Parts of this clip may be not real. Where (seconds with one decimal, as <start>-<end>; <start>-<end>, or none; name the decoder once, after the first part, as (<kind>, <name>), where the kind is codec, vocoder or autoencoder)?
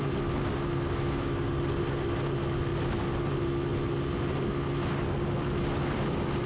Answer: none